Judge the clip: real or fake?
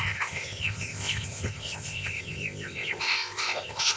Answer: fake